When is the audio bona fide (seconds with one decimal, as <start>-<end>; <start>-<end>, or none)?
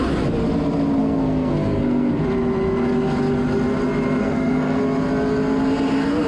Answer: 0.0-1.0; 2.1-4.2; 4.8-6.3